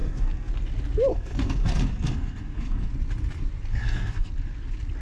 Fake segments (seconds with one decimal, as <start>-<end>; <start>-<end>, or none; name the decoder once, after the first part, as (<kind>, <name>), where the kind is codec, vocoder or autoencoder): 0.0-0.5 (codec, SNAC); 1.1-2.9; 3.7-4.3